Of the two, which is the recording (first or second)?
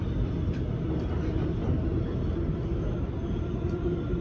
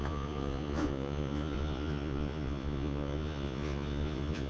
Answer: first